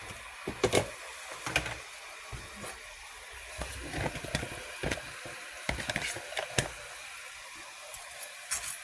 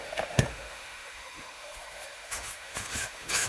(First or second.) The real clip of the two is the first